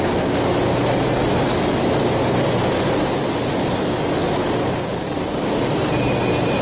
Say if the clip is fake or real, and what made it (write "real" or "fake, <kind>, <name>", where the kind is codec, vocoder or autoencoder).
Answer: real